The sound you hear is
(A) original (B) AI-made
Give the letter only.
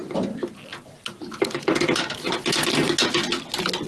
A